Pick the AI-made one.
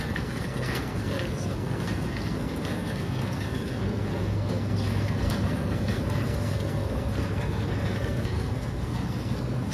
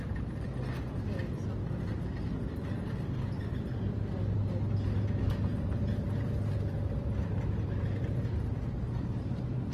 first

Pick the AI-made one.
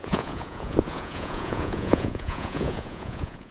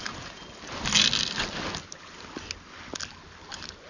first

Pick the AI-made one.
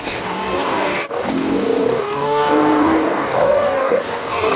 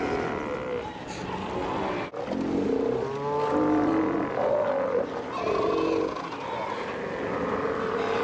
first